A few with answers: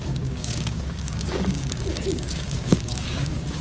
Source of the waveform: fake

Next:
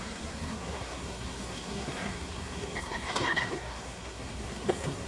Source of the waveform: fake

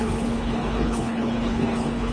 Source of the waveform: fake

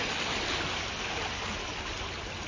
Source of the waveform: real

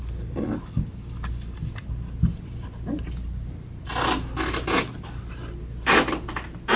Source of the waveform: real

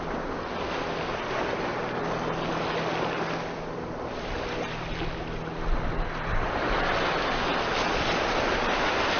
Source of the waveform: real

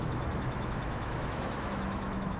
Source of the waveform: fake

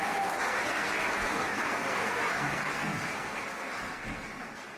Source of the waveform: fake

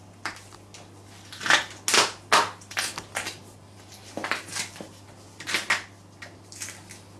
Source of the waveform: real